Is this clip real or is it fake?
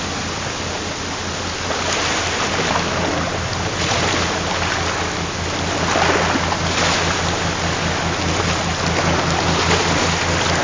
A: real